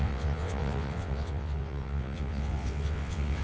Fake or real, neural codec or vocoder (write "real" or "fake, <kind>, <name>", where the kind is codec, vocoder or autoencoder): fake, vocoder, WaveNeXt